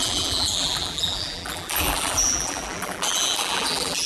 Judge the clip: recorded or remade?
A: remade